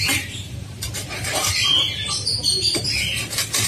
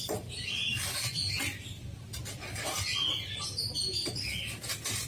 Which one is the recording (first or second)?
second